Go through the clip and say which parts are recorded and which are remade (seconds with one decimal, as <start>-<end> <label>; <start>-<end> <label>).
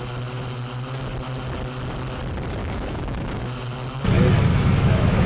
0.0-2.6 recorded; 2.6-3.4 remade; 3.4-4.5 recorded; 4.5-5.3 remade